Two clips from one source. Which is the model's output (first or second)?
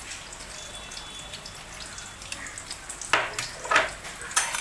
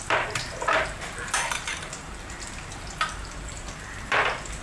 second